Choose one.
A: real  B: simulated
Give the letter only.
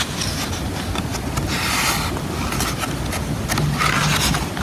A